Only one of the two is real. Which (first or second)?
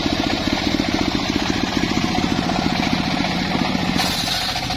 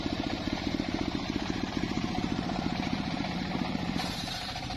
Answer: first